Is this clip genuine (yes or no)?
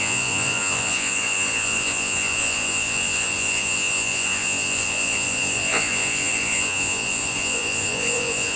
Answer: no